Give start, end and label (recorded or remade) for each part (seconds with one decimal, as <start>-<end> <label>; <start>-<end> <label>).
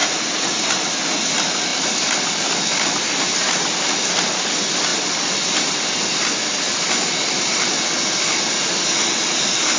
0.0-9.8 recorded